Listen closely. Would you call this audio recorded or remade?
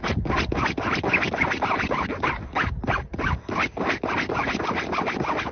recorded